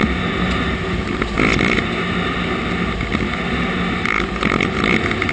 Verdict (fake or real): real